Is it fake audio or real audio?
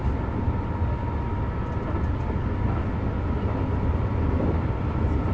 real